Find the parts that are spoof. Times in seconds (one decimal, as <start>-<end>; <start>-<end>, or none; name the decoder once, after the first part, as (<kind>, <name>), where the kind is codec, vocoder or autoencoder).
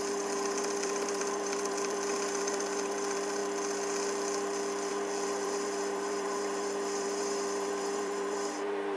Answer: 0.0-3.4 (vocoder, BigVGAN v2); 4.9-9.0